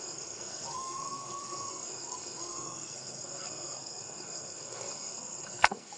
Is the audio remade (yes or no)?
yes